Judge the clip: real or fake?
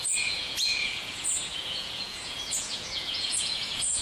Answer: fake